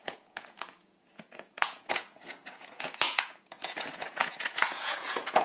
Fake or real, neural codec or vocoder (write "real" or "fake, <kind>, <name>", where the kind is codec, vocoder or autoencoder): fake, vocoder, Vocos